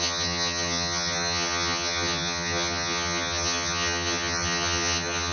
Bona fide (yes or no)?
no